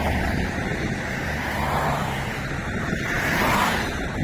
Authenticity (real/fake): fake